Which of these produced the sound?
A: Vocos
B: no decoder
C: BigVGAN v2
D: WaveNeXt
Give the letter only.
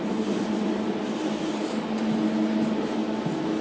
B